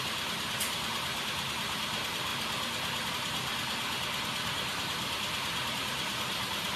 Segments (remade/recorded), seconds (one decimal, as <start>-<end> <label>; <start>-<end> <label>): 0.0-2.3 remade; 2.3-3.1 recorded; 3.1-3.5 remade; 3.5-5.7 recorded; 5.7-6.8 remade